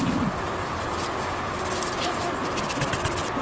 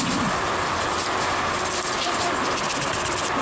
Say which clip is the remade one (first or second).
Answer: first